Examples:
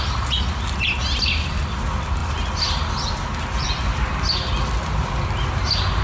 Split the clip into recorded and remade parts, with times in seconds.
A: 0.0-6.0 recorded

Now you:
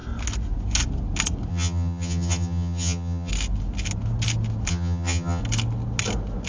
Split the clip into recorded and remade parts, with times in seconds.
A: 0.0-1.5 recorded; 1.5-3.3 remade; 3.3-4.7 recorded; 4.7-5.4 remade; 5.4-6.5 recorded

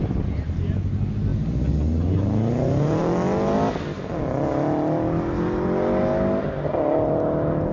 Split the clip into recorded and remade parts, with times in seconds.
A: 0.0-7.7 recorded

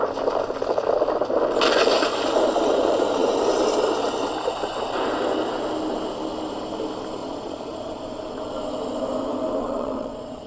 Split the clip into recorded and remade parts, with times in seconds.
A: 0.0-7.2 recorded; 7.2-8.0 remade; 8.0-9.6 recorded; 9.6-10.5 remade

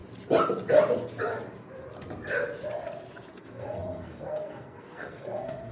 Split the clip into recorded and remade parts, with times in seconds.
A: 0.0-3.4 recorded; 3.4-5.7 remade

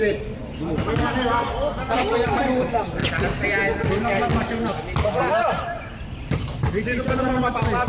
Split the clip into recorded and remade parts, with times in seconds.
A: 0.0-0.4 remade; 0.4-2.1 recorded; 2.1-3.0 remade; 3.0-3.9 recorded; 3.9-7.9 remade

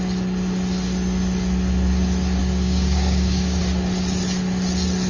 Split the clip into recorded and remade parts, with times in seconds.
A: 0.0-2.4 recorded; 2.4-3.6 remade; 3.6-5.1 recorded

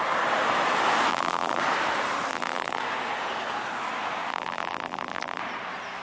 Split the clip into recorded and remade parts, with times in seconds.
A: 0.0-1.1 recorded; 1.1-1.6 remade; 1.6-2.3 recorded; 2.3-2.8 remade; 2.8-4.3 recorded; 4.3-5.4 remade; 5.4-6.0 recorded